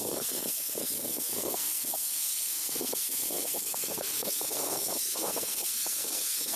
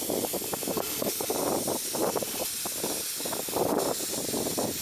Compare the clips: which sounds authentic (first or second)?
second